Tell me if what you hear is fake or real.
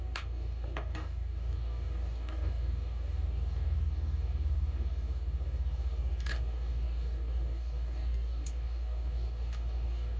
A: fake